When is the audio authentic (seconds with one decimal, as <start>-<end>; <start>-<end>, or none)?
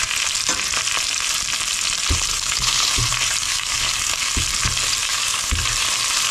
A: 0.0-2.3; 2.9-3.4; 4.3-5.0; 5.5-6.3